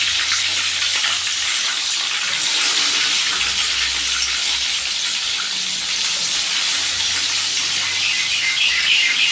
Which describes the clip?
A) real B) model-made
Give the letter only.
A